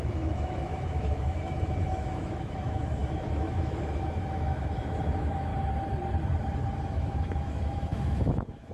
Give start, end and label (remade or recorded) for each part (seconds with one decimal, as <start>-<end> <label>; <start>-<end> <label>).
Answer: 0.0-5.5 remade; 5.5-6.9 recorded; 6.9-8.7 remade